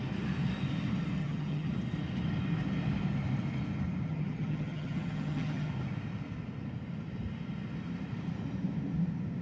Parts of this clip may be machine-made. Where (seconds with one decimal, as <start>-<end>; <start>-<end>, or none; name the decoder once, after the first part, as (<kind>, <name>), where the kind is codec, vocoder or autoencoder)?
1.2-1.7 (vocoder, HiFi-GAN); 4.1-5.7